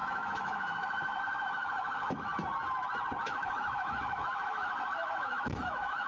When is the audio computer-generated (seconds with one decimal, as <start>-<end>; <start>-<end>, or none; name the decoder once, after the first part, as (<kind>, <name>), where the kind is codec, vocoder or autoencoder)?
0.0-2.3 (autoencoder, DAC-VAE); 3.2-6.1